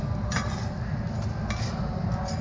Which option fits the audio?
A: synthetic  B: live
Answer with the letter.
B